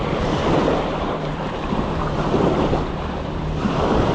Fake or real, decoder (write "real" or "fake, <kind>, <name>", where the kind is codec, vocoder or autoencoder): fake, vocoder, BigVGAN v2